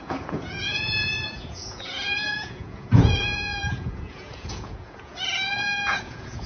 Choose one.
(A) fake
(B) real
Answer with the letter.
A